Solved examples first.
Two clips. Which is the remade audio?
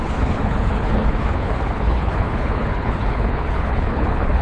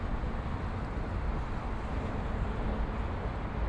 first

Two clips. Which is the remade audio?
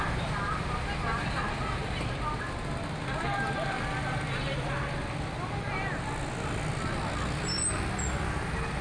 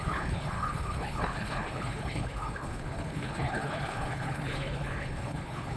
second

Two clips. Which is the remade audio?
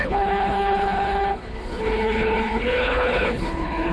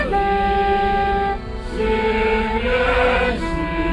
first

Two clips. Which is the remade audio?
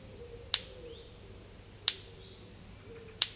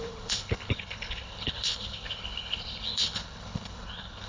second